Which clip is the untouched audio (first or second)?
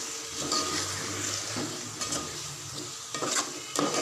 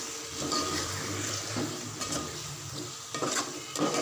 first